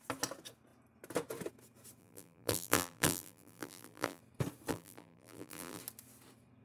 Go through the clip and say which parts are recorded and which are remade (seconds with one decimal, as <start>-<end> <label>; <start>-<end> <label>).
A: 0.0-2.0 recorded; 2.0-4.2 remade; 4.2-4.7 recorded; 4.7-5.8 remade; 5.8-6.6 recorded